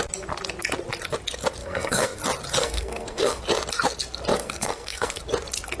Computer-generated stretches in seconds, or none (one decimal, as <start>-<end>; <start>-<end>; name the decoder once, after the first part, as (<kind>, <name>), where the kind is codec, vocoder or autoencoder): 1.6-2.2 (codec, SNAC); 2.6-3.4; 4.3-5.2